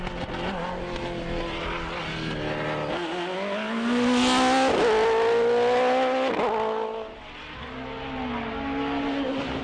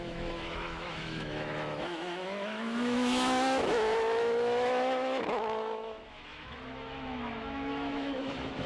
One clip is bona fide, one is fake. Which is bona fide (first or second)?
first